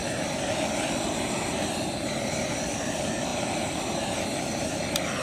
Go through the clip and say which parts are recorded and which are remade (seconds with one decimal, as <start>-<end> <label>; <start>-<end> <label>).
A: 0.0-2.8 remade; 2.8-3.3 recorded; 3.3-4.2 remade; 4.2-5.2 recorded